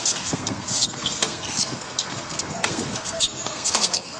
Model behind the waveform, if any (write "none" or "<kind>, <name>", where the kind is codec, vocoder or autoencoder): codec, SNAC